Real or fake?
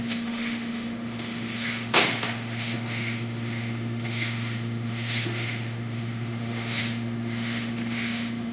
fake